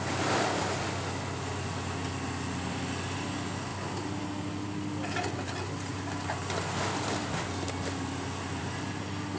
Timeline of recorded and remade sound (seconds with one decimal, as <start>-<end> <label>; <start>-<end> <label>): 0.0-9.4 recorded